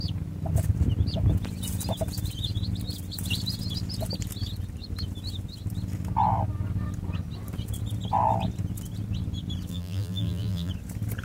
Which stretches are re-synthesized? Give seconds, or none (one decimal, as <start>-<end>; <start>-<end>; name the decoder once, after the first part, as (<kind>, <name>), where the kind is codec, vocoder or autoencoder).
9.7-10.7 (vocoder, BigVGAN v2)